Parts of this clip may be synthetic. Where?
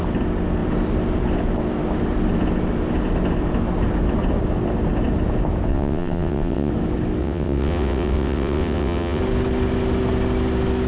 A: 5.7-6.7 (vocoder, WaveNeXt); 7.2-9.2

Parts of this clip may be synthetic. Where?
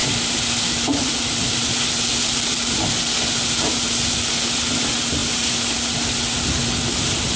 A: none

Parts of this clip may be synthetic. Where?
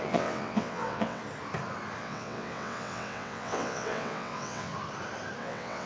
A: 0.0-1.2 (vocoder, WaveNeXt); 2.0-4.7; 5.4-5.9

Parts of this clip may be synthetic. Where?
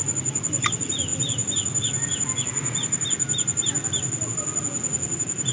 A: none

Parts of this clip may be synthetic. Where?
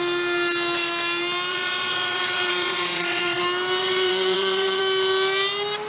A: 1.5-3.4 (vocoder, WaveNeXt); 3.8-4.8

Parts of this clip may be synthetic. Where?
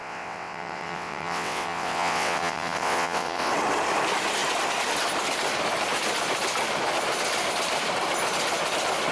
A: 0.0-3.5 (vocoder, WaveNeXt)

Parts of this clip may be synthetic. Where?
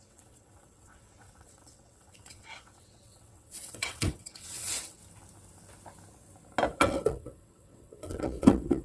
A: 0.0-5.0 (vocoder, WaveNeXt); 6.8-8.8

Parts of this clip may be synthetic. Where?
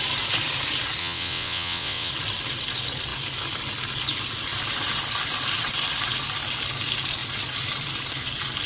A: 1.0-2.1 (vocoder, WaveNeXt)